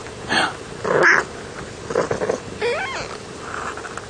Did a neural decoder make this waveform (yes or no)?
no